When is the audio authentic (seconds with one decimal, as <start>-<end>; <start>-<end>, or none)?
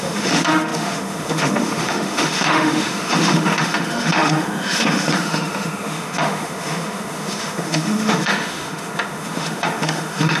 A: none